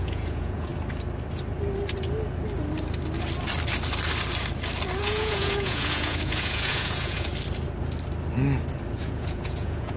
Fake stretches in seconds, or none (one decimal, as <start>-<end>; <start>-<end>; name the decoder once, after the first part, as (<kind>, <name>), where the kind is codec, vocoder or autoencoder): 0.0-0.7 (vocoder, Vocos); 5.0-7.3; 9.0-10.0